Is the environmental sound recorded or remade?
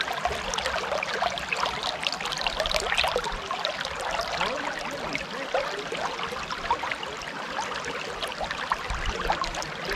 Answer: recorded